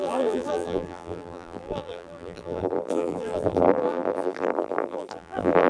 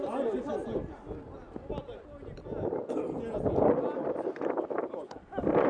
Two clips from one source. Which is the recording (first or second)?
second